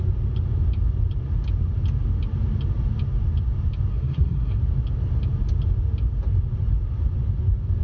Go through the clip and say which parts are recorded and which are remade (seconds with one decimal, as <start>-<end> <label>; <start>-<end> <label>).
0.0-3.9 recorded; 3.9-4.6 remade; 4.6-7.8 recorded